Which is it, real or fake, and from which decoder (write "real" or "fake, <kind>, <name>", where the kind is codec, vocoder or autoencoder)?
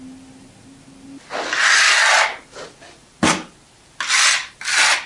real